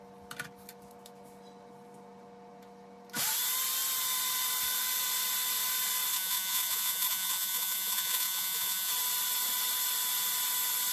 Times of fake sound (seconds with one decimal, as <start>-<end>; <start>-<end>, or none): 6.1-8.9